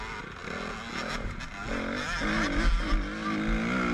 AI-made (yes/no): no